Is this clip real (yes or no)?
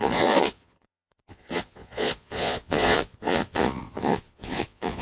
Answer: no